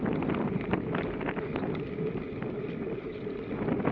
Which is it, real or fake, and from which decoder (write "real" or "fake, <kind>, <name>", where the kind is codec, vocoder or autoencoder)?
real